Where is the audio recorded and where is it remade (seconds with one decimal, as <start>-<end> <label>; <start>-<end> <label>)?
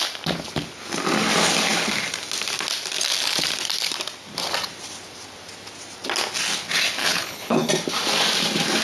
0.0-7.0 recorded; 7.0-7.7 remade; 7.7-8.8 recorded